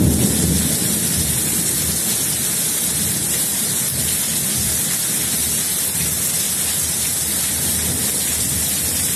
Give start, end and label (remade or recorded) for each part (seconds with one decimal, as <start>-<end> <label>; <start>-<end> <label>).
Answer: 0.0-3.5 recorded; 3.5-5.8 remade; 5.8-9.2 recorded